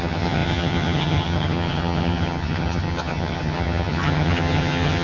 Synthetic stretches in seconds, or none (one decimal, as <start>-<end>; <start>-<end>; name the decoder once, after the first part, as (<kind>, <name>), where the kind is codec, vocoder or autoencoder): 0.0-5.0 (vocoder, HiFi-GAN)